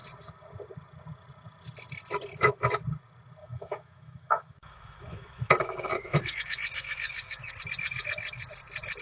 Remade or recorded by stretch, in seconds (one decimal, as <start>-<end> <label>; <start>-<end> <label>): 0.0-3.4 recorded; 3.4-7.5 remade; 7.5-9.0 recorded